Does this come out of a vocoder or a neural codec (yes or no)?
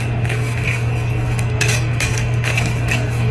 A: yes